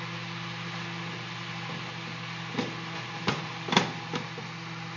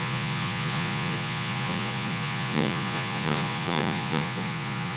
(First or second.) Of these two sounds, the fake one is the second